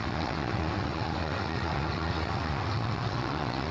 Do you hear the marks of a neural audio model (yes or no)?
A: yes